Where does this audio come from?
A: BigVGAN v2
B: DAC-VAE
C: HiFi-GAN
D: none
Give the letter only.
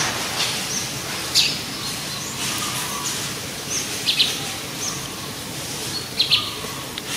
D